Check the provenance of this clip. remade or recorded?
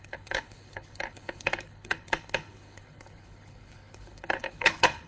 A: remade